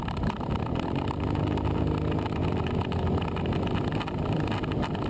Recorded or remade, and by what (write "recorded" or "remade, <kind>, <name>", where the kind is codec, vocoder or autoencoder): recorded